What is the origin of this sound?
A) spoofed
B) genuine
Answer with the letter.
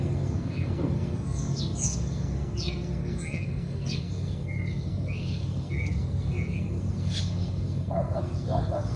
A